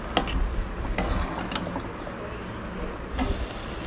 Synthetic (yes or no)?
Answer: no